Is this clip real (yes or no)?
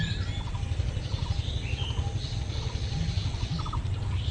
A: yes